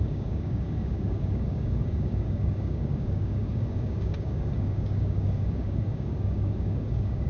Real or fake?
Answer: fake